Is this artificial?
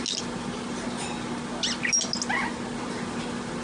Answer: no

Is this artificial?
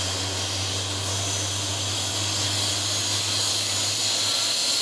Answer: no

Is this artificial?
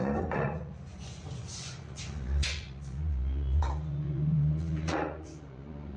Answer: yes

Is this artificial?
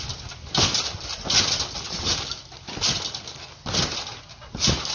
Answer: no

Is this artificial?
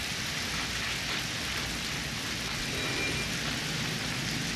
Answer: no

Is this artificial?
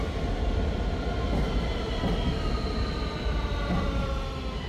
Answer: no